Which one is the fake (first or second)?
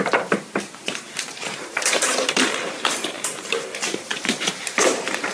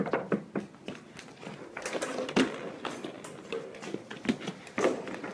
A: first